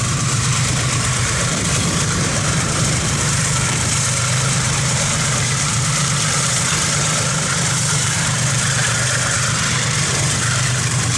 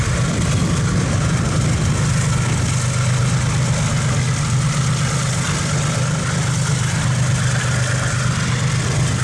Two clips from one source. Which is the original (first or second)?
second